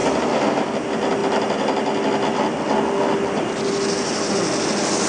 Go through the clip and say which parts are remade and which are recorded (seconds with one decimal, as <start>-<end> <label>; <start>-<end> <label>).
0.0-5.1 recorded